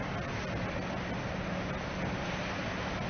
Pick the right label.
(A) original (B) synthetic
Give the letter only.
A